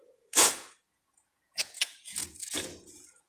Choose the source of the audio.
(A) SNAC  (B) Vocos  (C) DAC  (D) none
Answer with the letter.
B